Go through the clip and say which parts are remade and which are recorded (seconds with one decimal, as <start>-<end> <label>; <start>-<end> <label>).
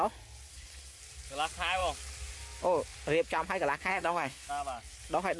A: 0.0-0.5 recorded; 0.5-1.0 remade; 1.0-3.9 recorded; 3.9-4.5 remade; 4.5-5.4 recorded